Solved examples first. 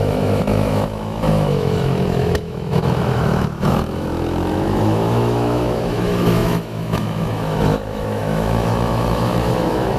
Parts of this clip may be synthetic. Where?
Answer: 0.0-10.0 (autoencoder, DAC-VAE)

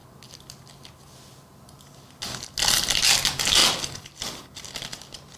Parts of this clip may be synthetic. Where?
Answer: none